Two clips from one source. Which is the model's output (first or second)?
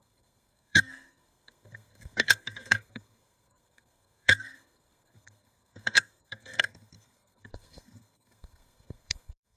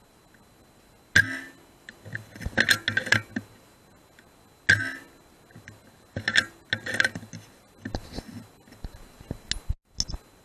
first